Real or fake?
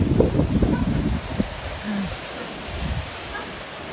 real